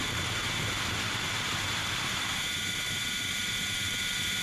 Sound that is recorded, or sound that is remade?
remade